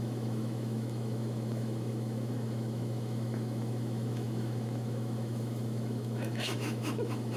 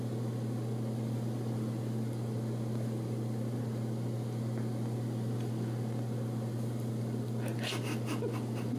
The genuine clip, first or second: second